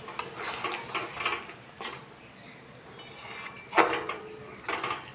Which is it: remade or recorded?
recorded